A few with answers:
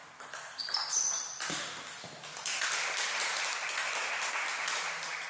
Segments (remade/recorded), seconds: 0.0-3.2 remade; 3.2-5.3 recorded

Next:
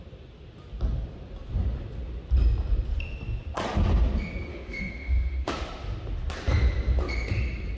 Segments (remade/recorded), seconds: 0.0-4.5 recorded; 4.5-5.5 remade; 5.5-7.8 recorded

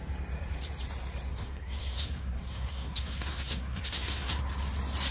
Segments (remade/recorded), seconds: 0.0-1.3 recorded; 1.3-4.4 remade; 4.4-5.1 recorded

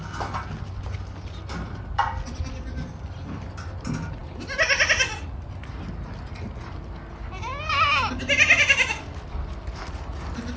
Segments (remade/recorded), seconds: 0.0-10.6 recorded

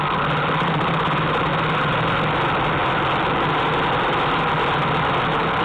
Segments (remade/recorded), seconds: 0.0-5.6 recorded

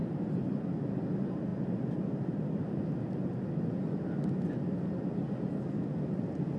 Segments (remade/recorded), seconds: 0.0-6.6 recorded

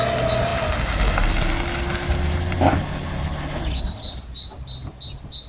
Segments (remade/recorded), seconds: 0.0-5.5 recorded